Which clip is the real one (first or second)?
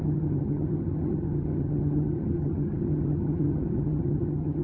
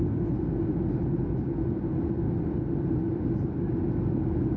second